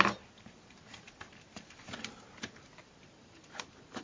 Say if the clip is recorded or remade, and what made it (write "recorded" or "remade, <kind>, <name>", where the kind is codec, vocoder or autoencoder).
remade, vocoder, BigVGAN v2